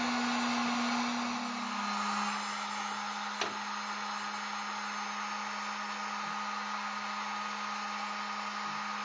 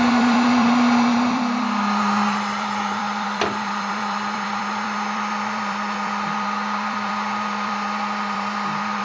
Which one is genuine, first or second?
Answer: first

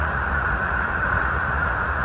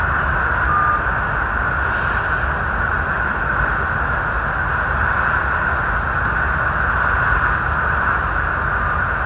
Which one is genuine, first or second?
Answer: second